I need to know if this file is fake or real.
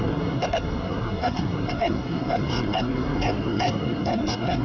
fake